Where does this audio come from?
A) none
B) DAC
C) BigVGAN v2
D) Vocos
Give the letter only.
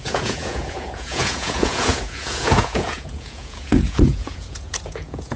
D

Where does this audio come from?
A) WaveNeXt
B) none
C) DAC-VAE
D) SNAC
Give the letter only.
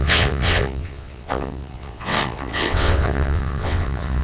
A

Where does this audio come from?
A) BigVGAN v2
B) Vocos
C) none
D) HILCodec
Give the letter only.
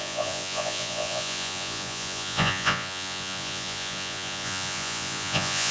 B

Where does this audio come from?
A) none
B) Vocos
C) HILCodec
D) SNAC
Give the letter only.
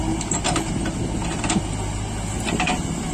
A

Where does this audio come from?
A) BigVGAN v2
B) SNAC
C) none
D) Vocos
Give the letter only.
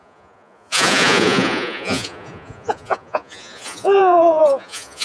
D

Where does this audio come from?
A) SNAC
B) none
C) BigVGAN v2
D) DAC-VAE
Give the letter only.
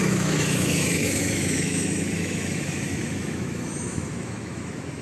D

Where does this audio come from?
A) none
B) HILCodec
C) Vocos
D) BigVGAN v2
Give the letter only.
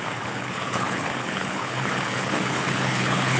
B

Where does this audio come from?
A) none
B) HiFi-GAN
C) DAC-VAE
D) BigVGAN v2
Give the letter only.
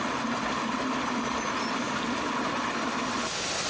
A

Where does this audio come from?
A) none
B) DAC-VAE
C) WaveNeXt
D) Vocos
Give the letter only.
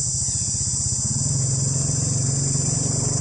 A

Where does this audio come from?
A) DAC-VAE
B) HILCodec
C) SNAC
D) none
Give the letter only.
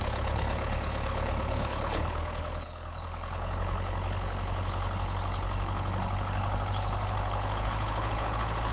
B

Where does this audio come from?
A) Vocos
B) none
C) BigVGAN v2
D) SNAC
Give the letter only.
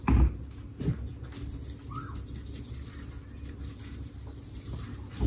B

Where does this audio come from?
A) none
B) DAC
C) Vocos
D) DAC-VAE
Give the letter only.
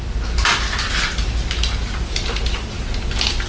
A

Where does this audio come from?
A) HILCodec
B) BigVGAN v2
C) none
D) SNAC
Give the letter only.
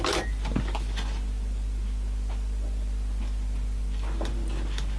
C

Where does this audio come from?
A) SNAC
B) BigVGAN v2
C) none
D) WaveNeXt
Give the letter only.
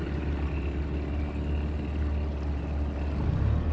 C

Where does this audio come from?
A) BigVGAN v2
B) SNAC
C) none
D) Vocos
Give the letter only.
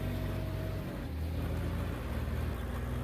C